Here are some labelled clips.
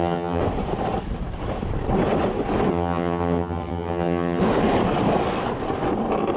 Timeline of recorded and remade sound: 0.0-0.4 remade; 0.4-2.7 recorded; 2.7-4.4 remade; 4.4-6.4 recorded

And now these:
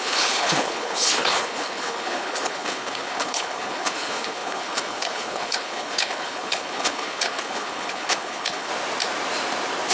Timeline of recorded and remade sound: 0.0-8.7 remade; 8.7-9.9 recorded

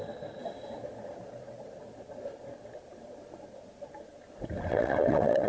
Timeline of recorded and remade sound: 0.0-4.7 recorded; 4.7-5.5 remade

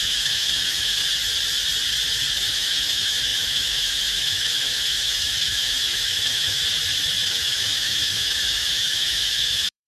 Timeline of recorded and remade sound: 0.0-1.0 remade; 1.0-2.5 recorded; 2.5-6.6 remade; 6.6-7.3 recorded; 7.3-9.9 remade

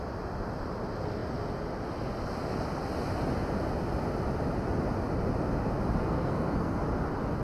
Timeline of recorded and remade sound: 0.0-6.0 recorded; 6.0-6.8 remade; 6.8-7.4 recorded